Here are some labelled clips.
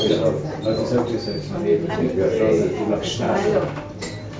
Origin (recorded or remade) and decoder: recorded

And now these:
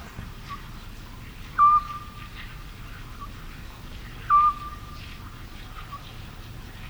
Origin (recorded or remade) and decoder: recorded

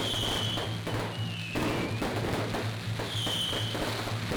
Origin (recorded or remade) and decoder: recorded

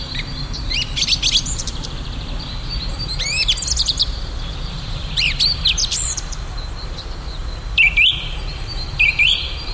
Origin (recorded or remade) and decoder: remade, vocoder, BigVGAN v2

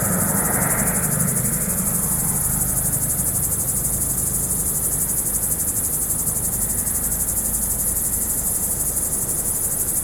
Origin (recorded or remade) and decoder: recorded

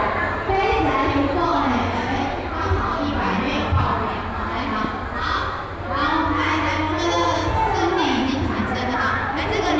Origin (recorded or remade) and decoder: recorded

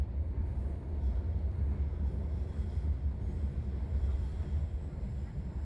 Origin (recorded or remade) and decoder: recorded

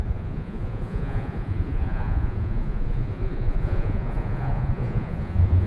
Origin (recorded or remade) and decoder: remade, vocoder, Vocos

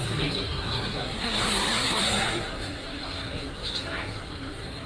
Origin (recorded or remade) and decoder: remade, codec, SNAC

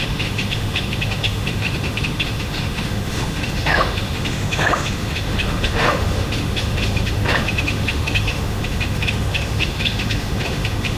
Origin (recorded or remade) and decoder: remade, autoencoder, DAC-VAE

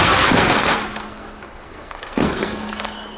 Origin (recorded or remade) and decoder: remade, codec, SNAC